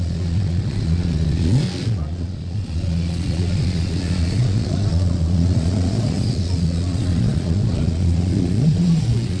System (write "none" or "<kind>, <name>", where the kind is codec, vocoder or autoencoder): vocoder, Vocos